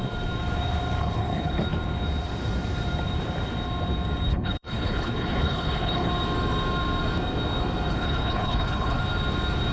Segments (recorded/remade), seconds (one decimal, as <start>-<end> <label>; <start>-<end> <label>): 0.0-1.0 recorded; 1.0-1.6 remade; 1.6-4.3 recorded; 4.3-6.1 remade; 6.1-7.9 recorded; 7.9-9.0 remade; 9.0-9.7 recorded